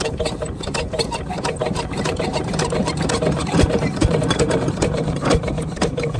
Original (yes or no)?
no